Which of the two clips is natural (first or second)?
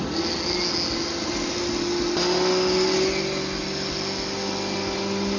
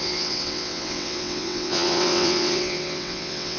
first